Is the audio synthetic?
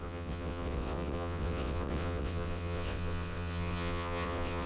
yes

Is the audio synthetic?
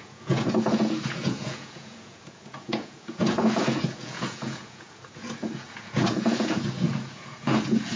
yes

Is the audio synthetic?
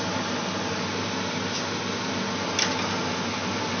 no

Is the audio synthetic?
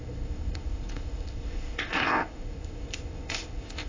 yes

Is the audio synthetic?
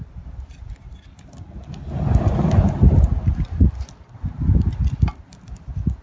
no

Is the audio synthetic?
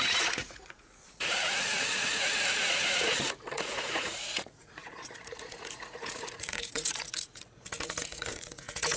yes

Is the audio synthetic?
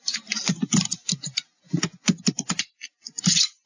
no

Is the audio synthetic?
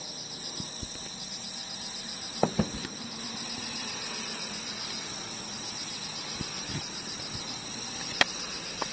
no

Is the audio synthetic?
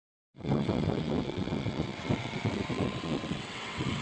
yes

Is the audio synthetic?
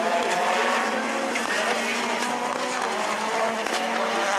no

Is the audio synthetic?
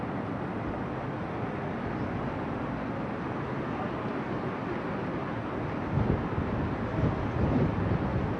no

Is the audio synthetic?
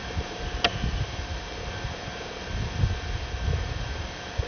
no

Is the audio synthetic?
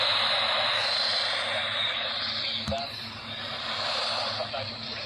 no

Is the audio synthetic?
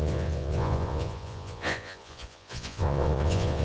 yes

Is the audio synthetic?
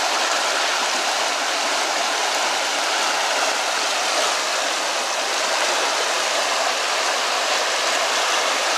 no